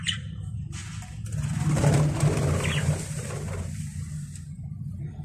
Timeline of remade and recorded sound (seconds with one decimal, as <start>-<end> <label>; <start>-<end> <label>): 0.0-0.8 remade; 0.8-3.8 recorded; 3.8-5.2 remade